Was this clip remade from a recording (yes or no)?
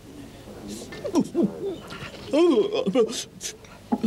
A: no